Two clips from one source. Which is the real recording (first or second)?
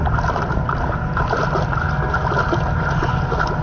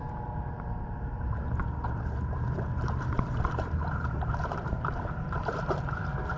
first